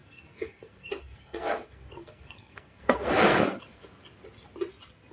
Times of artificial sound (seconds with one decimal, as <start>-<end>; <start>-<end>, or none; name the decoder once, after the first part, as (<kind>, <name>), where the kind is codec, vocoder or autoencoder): 0.0-3.8 (codec, SNAC)